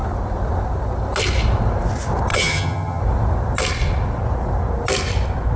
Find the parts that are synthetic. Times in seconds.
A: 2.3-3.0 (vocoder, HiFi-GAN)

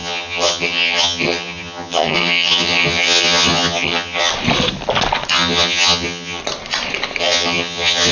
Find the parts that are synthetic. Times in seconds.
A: 0.0-4.3 (vocoder, HiFi-GAN); 5.3-6.4; 7.2-8.1

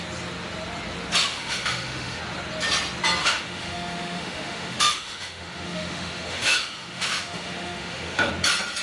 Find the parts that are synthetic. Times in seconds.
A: 1.2-2.2 (autoencoder, DAC-VAE); 3.2-8.3

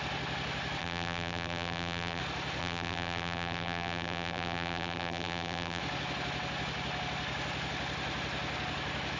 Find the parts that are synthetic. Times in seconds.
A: 0.8-2.2 (vocoder, BigVGAN v2); 2.6-5.8

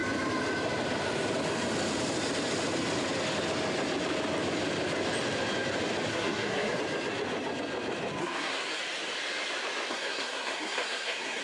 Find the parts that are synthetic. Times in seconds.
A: 6.1-6.8 (codec, SNAC); 8.2-8.8; 9.9-11.4